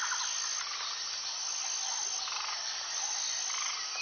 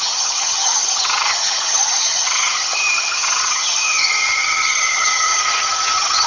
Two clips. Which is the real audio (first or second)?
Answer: first